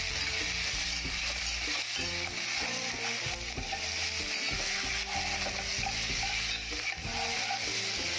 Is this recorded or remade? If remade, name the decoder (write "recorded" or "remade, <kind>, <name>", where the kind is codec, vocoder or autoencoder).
recorded